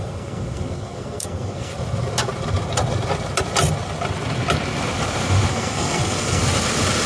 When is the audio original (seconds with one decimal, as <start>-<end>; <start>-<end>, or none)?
1.7-5.5; 6.4-7.1